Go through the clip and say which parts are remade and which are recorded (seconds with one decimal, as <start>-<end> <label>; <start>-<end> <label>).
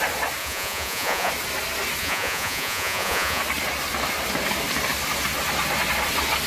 0.0-0.4 recorded; 0.4-1.3 remade; 1.3-2.0 recorded; 2.0-3.4 remade; 3.4-6.5 recorded